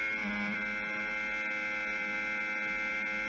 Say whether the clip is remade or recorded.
recorded